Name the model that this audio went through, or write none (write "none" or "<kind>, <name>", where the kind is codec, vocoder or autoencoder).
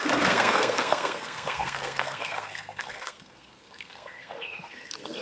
codec, SNAC